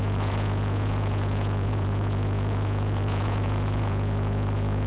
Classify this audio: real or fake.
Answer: fake